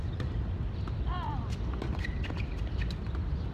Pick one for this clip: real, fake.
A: real